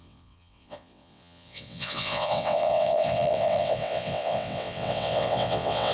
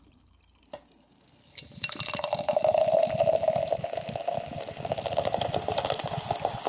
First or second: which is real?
second